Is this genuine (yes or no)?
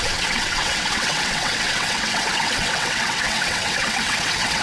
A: no